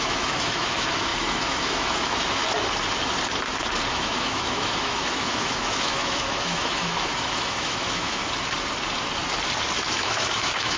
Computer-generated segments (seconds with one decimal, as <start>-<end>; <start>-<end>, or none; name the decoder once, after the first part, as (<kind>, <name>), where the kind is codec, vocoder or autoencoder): 0.0-2.4 (autoencoder, DAC-VAE); 3.9-8.2; 9.9-10.8